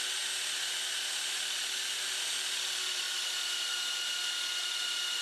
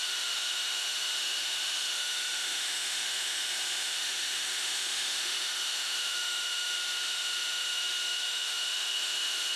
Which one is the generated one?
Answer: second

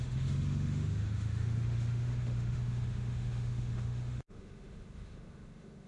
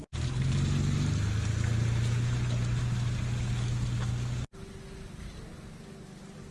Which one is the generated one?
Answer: first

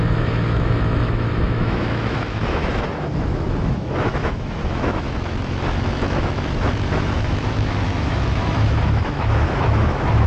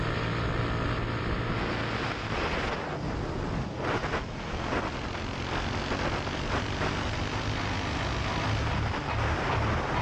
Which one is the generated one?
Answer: first